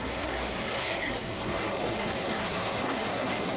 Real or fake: fake